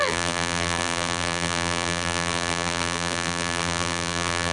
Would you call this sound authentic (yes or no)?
no